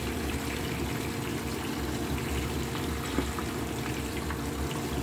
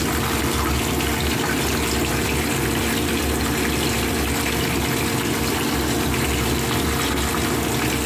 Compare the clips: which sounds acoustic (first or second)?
second